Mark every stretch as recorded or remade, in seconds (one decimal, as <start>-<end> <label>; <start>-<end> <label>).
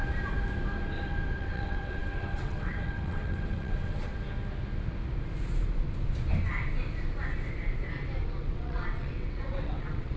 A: 0.0-1.4 recorded; 1.4-4.1 remade; 4.1-8.3 recorded; 8.3-10.2 remade